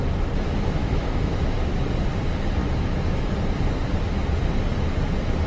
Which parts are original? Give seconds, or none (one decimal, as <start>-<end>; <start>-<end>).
0.0-0.8; 1.8-2.6; 3.3-5.5